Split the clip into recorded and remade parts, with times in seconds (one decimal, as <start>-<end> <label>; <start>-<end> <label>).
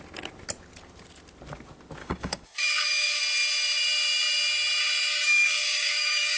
0.0-2.0 recorded; 2.0-3.2 remade; 3.2-5.1 recorded; 5.1-6.4 remade